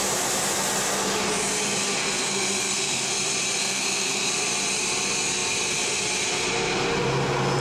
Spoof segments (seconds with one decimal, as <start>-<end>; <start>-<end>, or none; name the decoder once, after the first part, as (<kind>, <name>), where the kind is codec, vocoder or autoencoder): 2.0-3.1 (codec, SNAC); 3.6-4.3